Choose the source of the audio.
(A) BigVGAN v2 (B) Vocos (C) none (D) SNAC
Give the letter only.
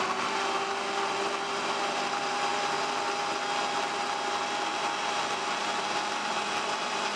C